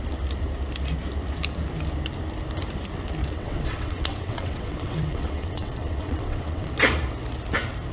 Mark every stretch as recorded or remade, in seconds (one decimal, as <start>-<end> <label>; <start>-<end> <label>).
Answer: 0.0-3.2 recorded; 3.2-6.7 remade; 6.7-7.9 recorded